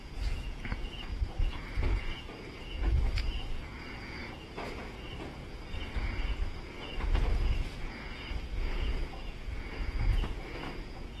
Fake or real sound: fake